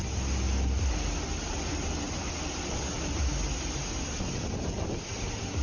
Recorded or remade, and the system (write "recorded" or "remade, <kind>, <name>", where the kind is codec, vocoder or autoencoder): recorded